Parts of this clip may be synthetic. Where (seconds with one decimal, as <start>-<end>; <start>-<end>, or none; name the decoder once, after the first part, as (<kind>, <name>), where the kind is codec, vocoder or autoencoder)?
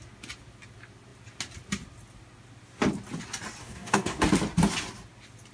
3.6-4.2 (codec, DAC)